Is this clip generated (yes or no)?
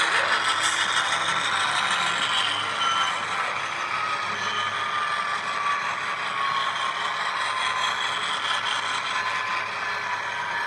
no